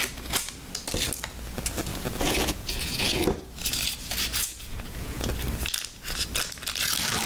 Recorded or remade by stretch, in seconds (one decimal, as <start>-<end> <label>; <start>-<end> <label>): 0.0-1.9 recorded; 1.9-3.2 remade; 3.2-4.4 recorded; 4.4-5.3 remade; 5.3-7.3 recorded